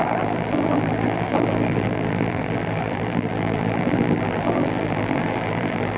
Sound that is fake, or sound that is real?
fake